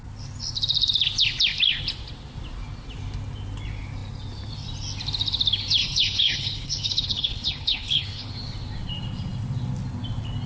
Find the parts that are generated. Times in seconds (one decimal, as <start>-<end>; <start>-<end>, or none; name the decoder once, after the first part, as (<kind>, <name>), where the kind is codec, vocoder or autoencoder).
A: 5.8-8.3 (codec, HILCodec)